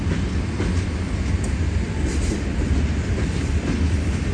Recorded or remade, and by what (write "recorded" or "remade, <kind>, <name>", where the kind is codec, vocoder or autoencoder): recorded